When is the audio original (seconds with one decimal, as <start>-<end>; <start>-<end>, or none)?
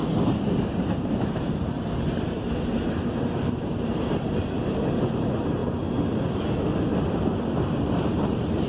5.6-7.7